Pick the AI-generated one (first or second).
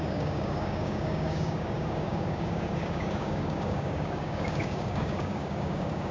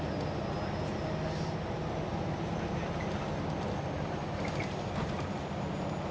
first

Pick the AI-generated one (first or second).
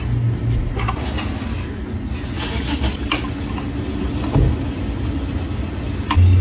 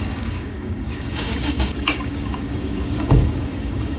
second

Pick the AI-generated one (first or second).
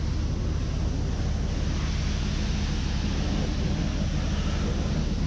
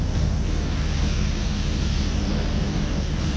second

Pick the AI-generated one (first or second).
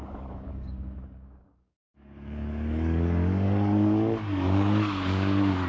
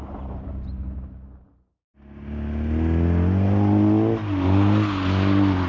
first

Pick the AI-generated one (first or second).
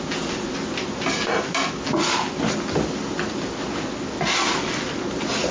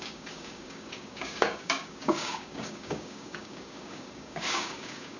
second